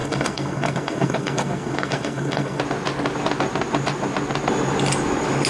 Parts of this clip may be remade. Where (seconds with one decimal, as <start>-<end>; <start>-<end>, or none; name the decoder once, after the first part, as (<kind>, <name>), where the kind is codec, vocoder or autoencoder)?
0.0-2.6 (codec, SNAC)